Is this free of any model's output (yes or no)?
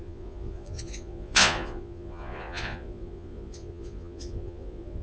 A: no